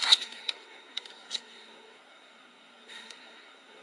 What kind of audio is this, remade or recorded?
remade